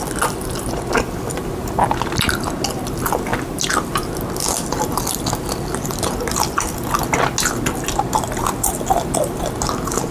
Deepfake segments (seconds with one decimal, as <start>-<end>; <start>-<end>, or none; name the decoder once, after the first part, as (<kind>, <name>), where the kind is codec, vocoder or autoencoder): none